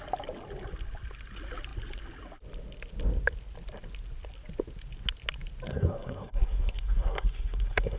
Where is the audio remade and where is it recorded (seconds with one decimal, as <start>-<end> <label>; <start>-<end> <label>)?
0.0-5.7 recorded; 5.7-8.0 remade